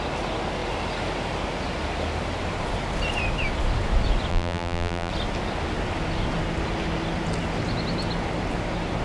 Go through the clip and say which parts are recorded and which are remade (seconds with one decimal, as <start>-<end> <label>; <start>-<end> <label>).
0.0-4.3 recorded; 4.3-5.1 remade; 5.1-9.0 recorded